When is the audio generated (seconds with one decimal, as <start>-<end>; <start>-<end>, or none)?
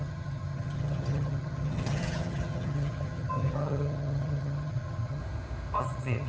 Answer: 0.0-5.2; 5.8-6.3